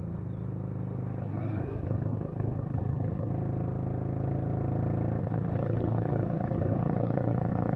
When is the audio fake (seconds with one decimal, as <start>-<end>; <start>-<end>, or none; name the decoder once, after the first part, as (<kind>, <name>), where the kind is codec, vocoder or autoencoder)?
1.2-3.3 (codec, SNAC); 5.2-7.8